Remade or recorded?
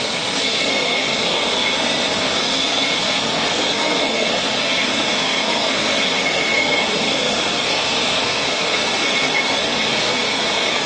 remade